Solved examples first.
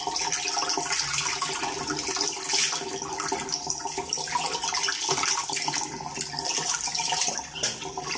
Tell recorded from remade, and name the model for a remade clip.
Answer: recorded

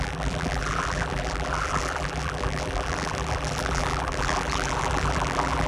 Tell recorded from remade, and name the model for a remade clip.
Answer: remade, vocoder, BigVGAN v2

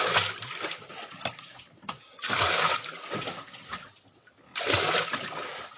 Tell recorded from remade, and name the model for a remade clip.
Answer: recorded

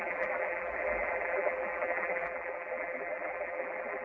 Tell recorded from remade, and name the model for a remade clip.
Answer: remade, vocoder, BigVGAN v2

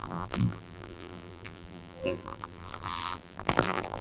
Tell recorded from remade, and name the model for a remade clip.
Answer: remade, vocoder, BigVGAN v2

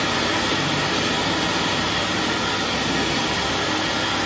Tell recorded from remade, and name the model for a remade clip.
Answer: recorded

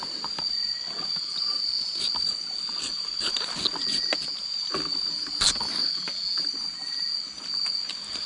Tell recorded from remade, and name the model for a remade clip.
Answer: recorded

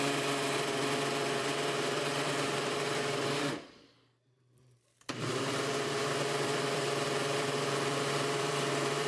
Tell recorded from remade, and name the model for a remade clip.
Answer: remade, vocoder, BigVGAN v2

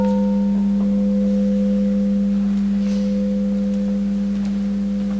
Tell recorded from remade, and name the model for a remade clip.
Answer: recorded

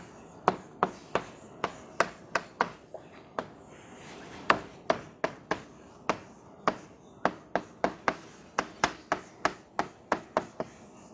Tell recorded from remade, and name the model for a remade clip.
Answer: recorded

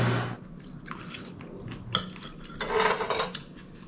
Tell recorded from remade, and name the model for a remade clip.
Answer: recorded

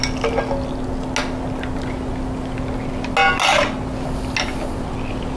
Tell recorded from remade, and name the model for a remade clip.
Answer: recorded